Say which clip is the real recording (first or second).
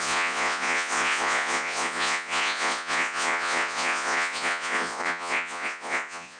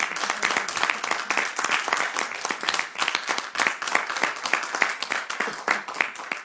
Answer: second